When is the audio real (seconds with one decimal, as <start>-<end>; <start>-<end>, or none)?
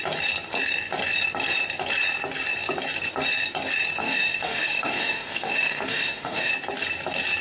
0.0-4.0; 6.5-7.4